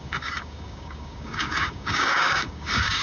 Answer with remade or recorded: remade